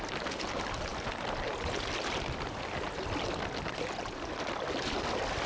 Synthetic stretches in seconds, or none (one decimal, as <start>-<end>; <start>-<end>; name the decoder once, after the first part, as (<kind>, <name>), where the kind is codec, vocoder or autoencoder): none